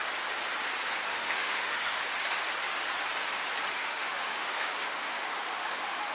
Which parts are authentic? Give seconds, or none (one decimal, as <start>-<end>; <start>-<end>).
0.0-1.1; 2.0-3.8